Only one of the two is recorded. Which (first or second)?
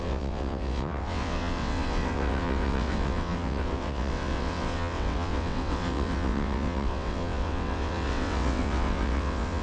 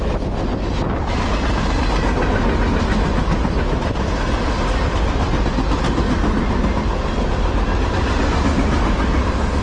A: second